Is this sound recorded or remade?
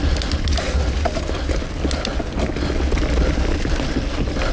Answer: recorded